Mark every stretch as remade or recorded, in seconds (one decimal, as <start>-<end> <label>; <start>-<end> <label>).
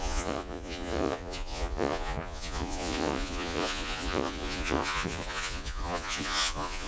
0.0-6.9 remade